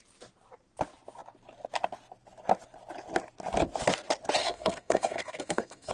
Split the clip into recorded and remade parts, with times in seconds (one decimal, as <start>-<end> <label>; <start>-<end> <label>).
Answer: 0.0-4.4 recorded; 4.4-5.9 remade